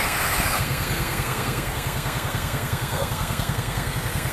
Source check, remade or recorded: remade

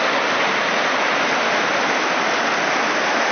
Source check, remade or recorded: recorded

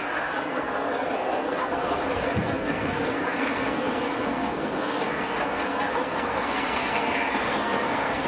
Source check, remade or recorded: remade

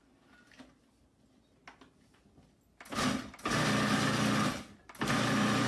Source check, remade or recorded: recorded